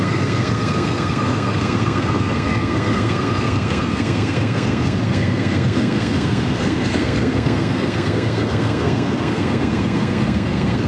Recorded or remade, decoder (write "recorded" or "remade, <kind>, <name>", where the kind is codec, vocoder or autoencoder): remade, codec, SNAC